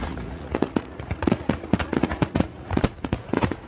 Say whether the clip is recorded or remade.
remade